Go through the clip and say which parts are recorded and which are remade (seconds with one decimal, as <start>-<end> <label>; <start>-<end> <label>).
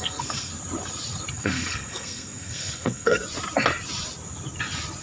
0.0-0.5 remade; 0.5-1.3 recorded; 1.3-3.2 remade; 3.2-5.0 recorded